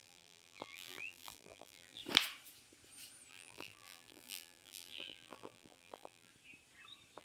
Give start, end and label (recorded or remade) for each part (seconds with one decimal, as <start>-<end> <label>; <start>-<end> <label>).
0.0-2.0 remade; 2.0-3.3 recorded; 3.3-6.3 remade; 6.3-7.2 recorded